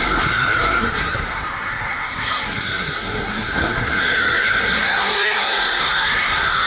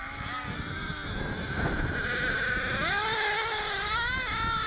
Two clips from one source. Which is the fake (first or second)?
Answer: first